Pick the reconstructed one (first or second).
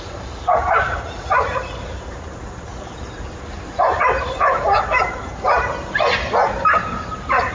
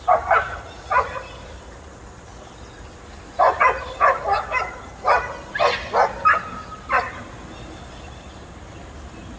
first